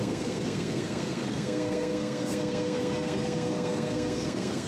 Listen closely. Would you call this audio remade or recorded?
remade